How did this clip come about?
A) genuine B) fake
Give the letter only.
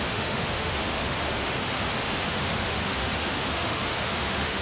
B